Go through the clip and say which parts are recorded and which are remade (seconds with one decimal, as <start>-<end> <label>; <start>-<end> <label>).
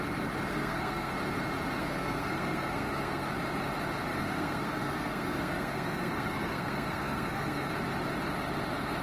0.0-0.5 recorded; 0.5-1.1 remade; 1.1-1.8 recorded; 1.8-3.3 remade; 3.3-4.1 recorded; 4.1-7.7 remade; 7.7-9.0 recorded